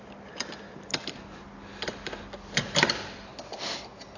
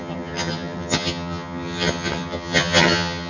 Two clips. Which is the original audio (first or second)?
first